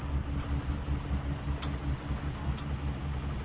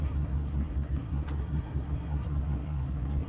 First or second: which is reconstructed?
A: second